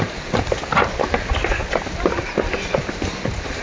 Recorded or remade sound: recorded